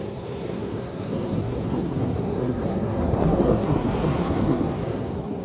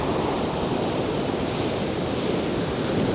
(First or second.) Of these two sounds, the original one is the second